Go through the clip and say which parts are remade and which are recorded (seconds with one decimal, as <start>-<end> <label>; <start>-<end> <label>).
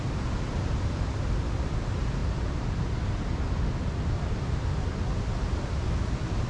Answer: 0.0-6.5 recorded